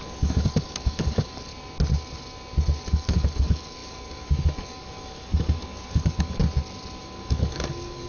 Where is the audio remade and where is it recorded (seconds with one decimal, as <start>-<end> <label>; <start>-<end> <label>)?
0.0-1.5 remade; 1.5-2.9 recorded; 2.9-6.4 remade; 6.4-7.0 recorded; 7.0-8.1 remade